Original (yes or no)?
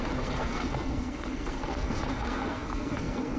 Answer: no